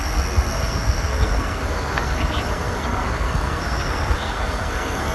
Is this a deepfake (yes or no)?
yes